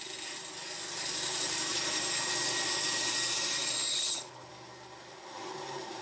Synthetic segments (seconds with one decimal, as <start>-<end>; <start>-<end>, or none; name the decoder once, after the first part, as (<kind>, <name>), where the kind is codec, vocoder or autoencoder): 3.9-4.5 (codec, HILCodec)